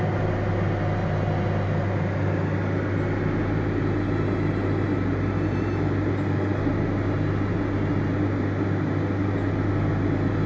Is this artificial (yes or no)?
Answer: no